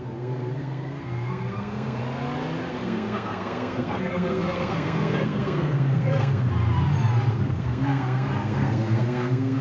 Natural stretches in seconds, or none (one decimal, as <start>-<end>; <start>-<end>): 2.0-2.7; 6.5-7.3